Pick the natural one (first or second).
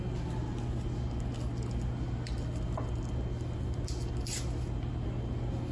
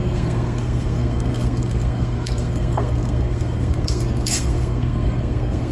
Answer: first